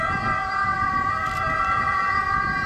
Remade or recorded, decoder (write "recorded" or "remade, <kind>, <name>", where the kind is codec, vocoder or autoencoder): remade, vocoder, BigVGAN v2